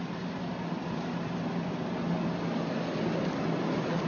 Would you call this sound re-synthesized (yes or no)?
no